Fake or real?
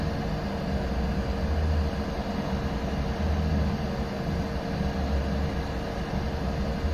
real